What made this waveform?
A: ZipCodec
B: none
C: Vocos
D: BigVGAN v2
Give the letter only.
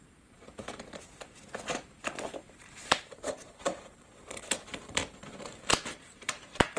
D